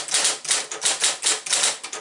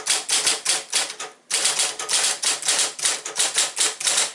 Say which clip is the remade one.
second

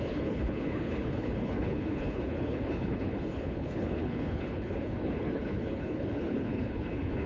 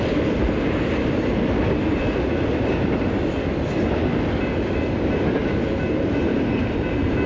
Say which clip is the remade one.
first